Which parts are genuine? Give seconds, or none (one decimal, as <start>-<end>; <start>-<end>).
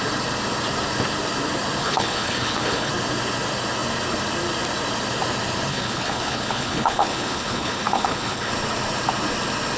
0.0-1.8; 2.9-5.7; 8.5-9.8